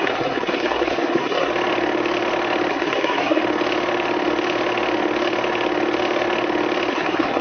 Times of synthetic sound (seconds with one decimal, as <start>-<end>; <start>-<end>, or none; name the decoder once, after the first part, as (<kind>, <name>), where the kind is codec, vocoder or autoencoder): 0.0-1.5 (codec, SNAC); 2.7-3.4; 6.9-7.4